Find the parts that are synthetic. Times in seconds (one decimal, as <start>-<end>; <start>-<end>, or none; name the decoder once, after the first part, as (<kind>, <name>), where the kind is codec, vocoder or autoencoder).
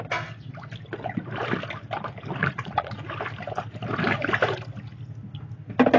2.4-2.9 (vocoder, Vocos)